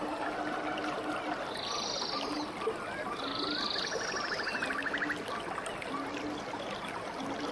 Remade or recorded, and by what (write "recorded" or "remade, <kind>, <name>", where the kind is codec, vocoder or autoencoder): recorded